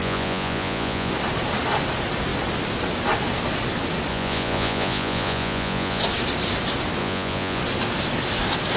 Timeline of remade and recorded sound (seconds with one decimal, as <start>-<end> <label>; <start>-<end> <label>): 0.0-1.1 remade; 1.1-4.1 recorded; 4.1-6.0 remade; 6.0-7.0 recorded; 7.0-7.6 remade; 7.6-8.8 recorded